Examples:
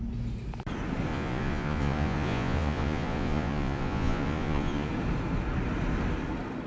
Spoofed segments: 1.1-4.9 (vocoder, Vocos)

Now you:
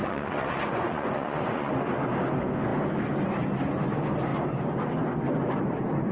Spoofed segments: 0.0-1.7 (vocoder, Vocos)

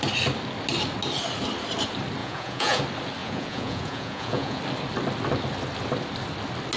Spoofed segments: 2.2-2.8 (vocoder, Vocos); 3.2-4.6

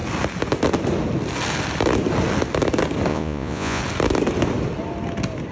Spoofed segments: 3.1-3.8 (vocoder, Vocos)

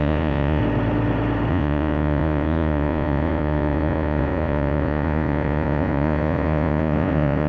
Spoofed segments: 0.0-0.6 (vocoder, Vocos); 1.5-7.5

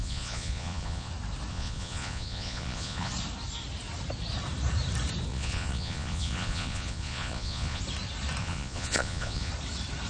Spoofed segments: 0.0-1.1 (vocoder, Vocos); 1.5-3.1; 5.3-7.8; 8.4-9.5

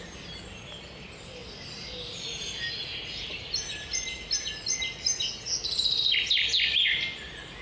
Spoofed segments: none

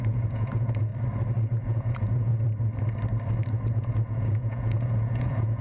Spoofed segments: 0.0-0.9 (vocoder, Vocos); 1.6-2.3; 3.7-5.6